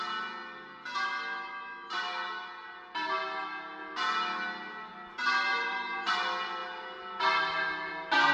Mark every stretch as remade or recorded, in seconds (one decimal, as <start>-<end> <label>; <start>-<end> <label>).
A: 0.0-5.5 recorded; 5.5-6.1 remade; 6.1-8.3 recorded

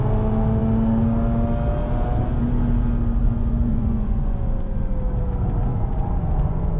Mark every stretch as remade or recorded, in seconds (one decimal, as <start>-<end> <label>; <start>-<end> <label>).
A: 0.0-3.2 recorded; 3.2-4.9 remade; 4.9-5.7 recorded; 5.7-6.8 remade